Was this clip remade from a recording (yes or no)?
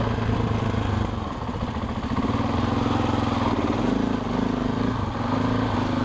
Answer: no